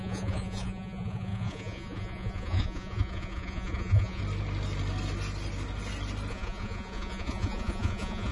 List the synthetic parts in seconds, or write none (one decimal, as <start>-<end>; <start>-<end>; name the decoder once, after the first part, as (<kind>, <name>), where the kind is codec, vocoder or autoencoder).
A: 0.0-4.2 (vocoder, Vocos); 6.3-8.3